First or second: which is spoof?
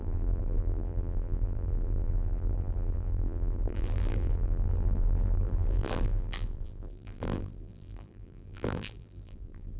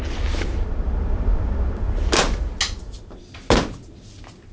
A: first